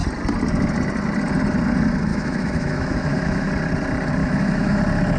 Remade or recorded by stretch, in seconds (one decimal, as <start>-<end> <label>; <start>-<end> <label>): 0.0-2.1 recorded; 2.1-3.5 remade; 3.5-4.2 recorded; 4.2-4.8 remade; 4.8-5.2 recorded